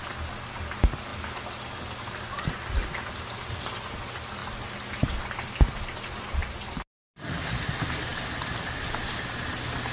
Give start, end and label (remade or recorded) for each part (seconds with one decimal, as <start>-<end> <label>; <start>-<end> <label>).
0.0-9.9 recorded